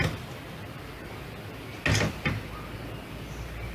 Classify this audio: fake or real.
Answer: real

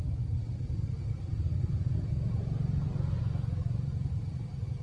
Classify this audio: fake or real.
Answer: fake